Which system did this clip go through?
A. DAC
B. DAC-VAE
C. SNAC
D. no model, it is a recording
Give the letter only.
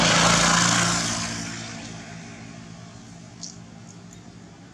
D